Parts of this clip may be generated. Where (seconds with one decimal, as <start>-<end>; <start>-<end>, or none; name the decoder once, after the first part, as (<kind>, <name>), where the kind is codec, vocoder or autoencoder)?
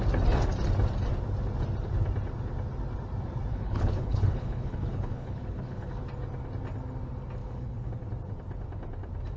3.5-5.9 (codec, HILCodec); 7.4-7.9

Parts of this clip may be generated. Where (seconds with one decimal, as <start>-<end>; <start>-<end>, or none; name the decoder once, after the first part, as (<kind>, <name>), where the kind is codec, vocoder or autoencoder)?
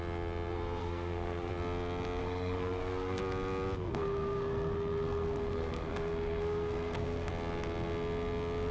0.8-1.5 (codec, SNAC); 2.2-3.2; 3.8-7.3